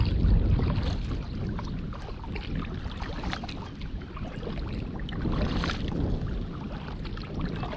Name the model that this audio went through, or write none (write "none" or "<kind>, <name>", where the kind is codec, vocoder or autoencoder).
none